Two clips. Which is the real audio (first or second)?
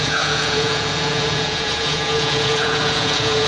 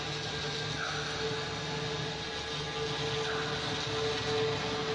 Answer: second